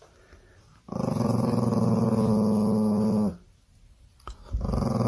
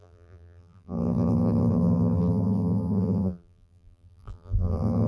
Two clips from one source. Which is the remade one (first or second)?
second